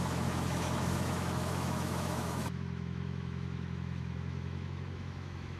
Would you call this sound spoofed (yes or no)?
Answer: yes